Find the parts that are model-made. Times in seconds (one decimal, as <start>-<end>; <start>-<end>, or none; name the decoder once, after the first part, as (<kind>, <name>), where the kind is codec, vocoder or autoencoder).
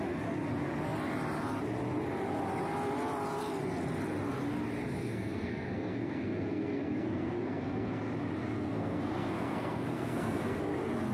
5.0-8.0 (codec, SNAC); 8.4-10.6